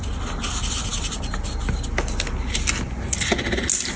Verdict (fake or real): real